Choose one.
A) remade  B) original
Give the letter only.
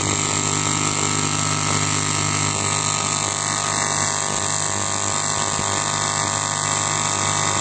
B